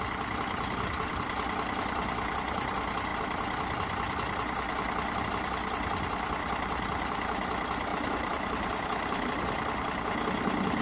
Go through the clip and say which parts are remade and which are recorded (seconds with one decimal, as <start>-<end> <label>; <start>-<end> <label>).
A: 0.0-7.9 recorded; 7.9-9.3 remade; 9.3-10.8 recorded